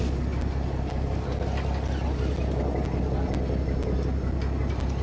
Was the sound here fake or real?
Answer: real